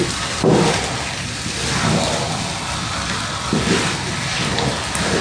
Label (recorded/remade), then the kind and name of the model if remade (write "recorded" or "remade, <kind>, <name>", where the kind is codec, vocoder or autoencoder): recorded